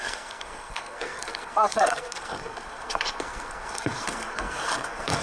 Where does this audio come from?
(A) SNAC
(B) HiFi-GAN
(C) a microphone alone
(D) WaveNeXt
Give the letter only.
A